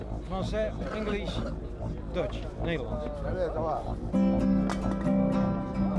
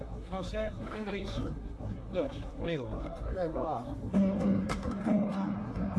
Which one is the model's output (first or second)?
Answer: second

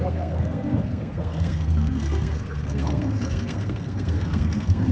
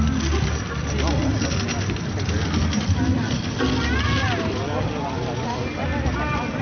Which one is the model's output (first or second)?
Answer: first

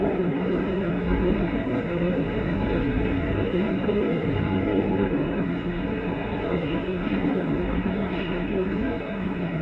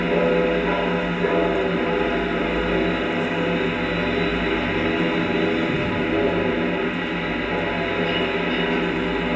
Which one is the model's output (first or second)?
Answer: first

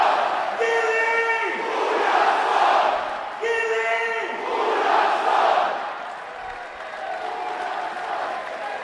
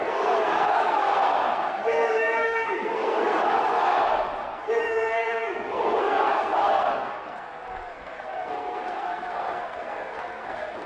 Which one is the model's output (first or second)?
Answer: second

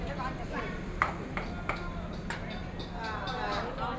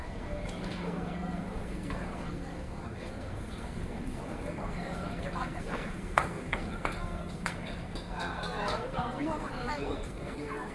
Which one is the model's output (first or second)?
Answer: second